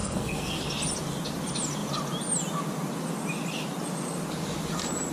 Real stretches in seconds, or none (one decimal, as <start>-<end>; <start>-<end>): 0.6-5.1